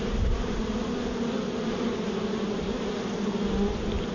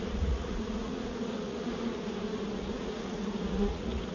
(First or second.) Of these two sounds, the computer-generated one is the second